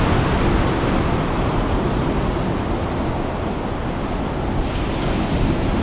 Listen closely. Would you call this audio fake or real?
real